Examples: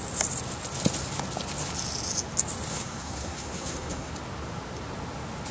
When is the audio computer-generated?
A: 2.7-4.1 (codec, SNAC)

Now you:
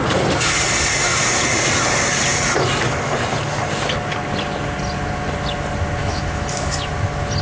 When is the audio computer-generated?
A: 6.0-6.9 (autoencoder, DAC-VAE)

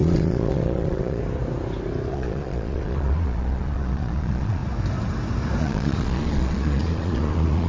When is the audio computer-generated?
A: 0.0-1.2 (vocoder, Vocos); 2.1-4.6; 5.6-7.7

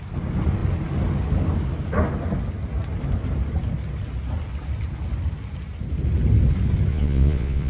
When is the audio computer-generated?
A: 6.9-7.7 (vocoder, Vocos)